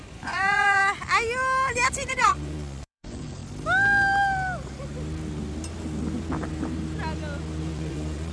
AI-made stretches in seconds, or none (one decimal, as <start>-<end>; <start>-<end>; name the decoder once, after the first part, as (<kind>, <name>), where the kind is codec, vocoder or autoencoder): 0.0-0.8 (vocoder, Vocos); 2.1-3.4; 7.7-8.3